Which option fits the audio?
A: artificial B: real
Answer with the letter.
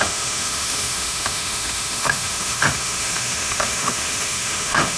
A